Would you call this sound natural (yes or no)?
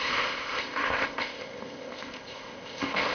no